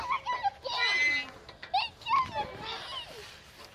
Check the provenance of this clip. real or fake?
real